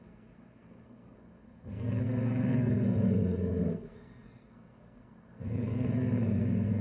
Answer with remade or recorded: remade